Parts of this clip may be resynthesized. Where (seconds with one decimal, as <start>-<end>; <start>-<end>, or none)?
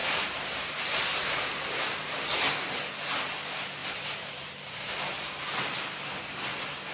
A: 0.0-2.2; 3.8-4.9